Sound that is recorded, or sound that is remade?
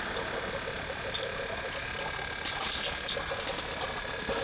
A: recorded